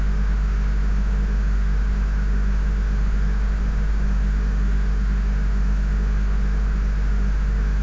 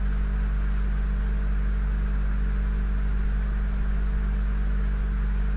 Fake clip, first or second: first